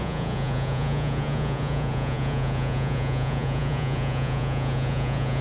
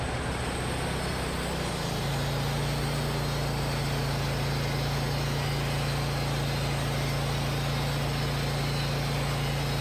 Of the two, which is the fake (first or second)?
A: first